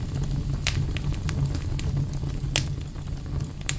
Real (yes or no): yes